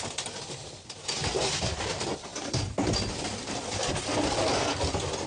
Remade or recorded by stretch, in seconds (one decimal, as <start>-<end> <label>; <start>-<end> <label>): 0.0-1.2 recorded; 1.2-1.8 remade; 1.8-2.3 recorded; 2.3-2.9 remade; 2.9-5.3 recorded